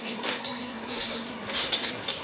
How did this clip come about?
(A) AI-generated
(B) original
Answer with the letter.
A